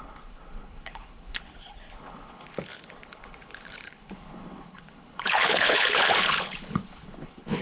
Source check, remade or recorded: remade